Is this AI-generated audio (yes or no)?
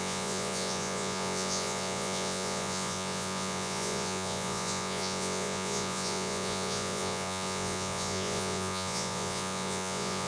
yes